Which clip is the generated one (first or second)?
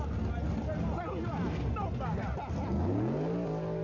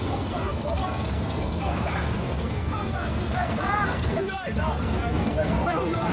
second